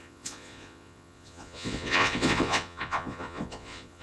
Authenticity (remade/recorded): remade